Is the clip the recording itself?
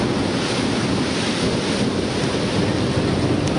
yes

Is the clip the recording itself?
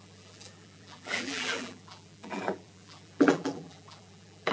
no